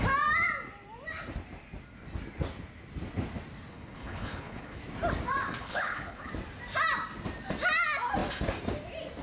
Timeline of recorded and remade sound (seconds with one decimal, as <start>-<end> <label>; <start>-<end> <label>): 0.0-3.7 recorded; 3.7-4.8 remade; 4.8-5.6 recorded; 5.6-6.3 remade; 6.3-9.2 recorded